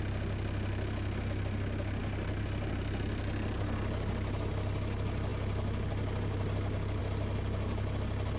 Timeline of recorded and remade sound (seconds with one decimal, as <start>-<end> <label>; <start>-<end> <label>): 0.0-8.4 recorded